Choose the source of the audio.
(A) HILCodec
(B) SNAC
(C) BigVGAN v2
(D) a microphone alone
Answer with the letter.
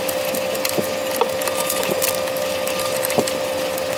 D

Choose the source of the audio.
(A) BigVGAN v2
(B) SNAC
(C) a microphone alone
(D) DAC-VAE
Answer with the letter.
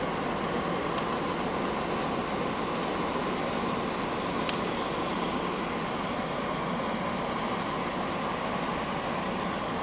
C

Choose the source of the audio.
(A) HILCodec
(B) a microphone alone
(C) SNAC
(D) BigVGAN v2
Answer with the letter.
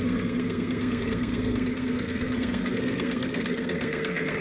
C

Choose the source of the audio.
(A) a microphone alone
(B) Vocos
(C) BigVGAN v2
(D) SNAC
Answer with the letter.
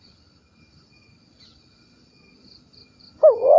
A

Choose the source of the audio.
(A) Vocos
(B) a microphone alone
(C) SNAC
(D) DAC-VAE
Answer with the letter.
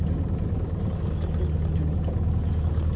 B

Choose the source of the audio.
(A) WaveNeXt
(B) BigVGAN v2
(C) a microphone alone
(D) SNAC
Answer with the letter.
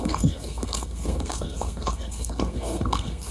D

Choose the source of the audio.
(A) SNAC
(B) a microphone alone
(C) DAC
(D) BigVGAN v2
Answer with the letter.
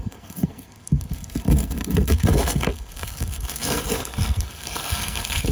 A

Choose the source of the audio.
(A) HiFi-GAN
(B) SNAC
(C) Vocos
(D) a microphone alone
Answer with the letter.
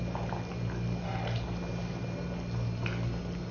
D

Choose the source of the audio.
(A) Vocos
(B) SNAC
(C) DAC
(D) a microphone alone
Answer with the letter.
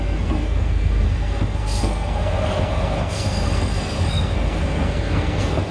B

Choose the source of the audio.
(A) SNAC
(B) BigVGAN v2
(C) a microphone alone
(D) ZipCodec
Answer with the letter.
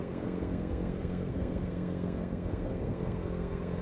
A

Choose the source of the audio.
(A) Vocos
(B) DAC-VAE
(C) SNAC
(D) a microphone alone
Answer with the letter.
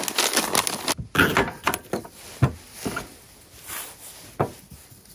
D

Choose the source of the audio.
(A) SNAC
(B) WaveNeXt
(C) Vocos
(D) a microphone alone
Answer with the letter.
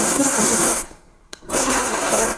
A